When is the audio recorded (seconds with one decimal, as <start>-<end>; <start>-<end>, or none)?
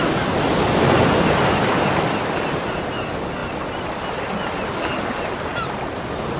0.0-6.4